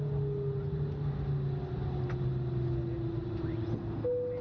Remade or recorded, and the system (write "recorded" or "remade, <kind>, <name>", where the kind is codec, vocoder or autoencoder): recorded